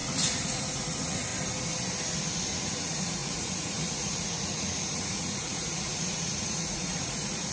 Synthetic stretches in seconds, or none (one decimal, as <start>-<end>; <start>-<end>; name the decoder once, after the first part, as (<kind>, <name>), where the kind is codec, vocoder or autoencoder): 0.0-1.3 (vocoder, Vocos); 2.6-7.5